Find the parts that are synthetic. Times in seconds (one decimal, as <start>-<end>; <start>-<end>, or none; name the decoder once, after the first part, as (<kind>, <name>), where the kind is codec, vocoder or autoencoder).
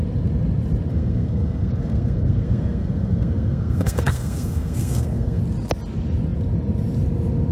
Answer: 0.9-5.4 (codec, SNAC)